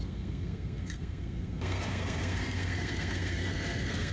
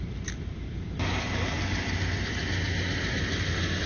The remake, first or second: first